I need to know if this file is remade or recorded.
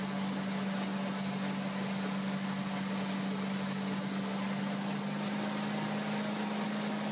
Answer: recorded